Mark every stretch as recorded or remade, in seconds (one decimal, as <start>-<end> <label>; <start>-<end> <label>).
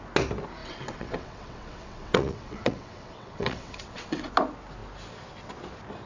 0.0-0.6 recorded; 0.6-4.3 remade; 4.3-6.1 recorded